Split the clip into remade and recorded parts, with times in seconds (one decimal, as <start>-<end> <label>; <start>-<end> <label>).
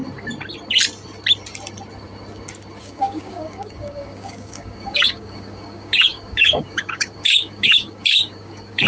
0.0-2.8 recorded; 2.8-8.9 remade